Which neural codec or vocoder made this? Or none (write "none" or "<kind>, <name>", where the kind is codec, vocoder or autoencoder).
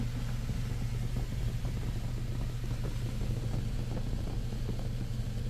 none